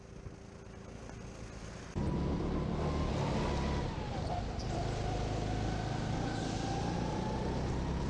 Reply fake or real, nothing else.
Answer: real